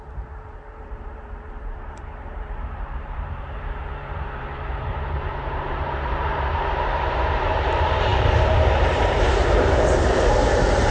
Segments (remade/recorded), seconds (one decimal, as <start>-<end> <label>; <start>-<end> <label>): 0.0-10.9 remade